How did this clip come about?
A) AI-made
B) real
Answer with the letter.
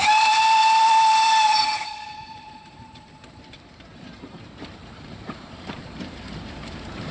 A